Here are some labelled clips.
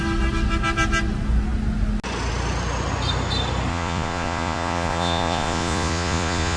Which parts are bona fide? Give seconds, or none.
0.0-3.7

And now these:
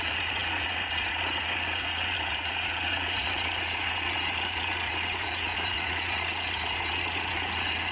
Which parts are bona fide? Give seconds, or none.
none

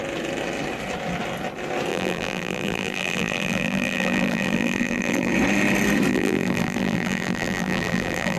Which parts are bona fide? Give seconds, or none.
0.0-1.9; 5.3-6.1

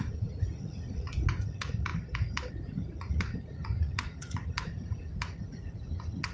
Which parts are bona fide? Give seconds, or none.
1.9-2.5

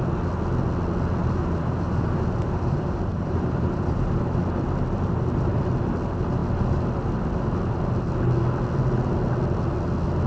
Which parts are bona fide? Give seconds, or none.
0.0-1.2; 4.2-10.3

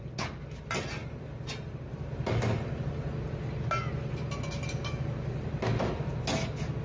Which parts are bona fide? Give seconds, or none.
0.0-6.8

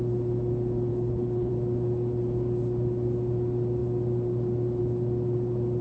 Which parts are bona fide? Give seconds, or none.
0.0-0.9; 1.5-5.8